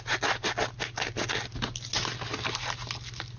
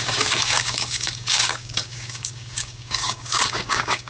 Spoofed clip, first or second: second